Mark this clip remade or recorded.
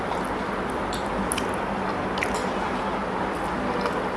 recorded